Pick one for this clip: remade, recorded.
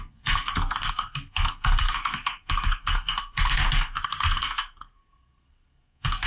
remade